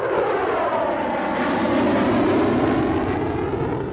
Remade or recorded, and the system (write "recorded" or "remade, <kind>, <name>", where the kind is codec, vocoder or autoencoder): recorded